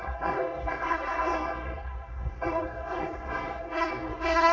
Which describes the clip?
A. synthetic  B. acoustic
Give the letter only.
A